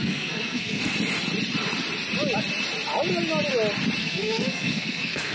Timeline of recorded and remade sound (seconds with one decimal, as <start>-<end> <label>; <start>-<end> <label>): 0.0-0.8 remade; 0.8-4.0 recorded; 4.0-5.3 remade

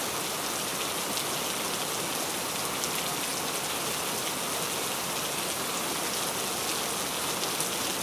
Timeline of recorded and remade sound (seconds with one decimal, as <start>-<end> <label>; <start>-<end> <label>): 0.0-8.0 recorded